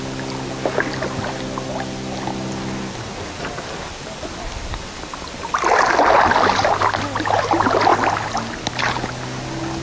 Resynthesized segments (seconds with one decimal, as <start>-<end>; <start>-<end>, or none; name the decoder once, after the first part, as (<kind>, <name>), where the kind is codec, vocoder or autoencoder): none